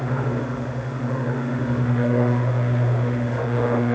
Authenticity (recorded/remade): remade